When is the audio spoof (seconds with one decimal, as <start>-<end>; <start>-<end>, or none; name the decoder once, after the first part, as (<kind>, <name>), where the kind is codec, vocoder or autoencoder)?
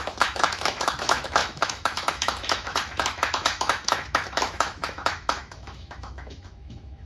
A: 0.0-7.1 (autoencoder, DAC-VAE)